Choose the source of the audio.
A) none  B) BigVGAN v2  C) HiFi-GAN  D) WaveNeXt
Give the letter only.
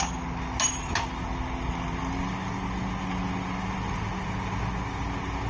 A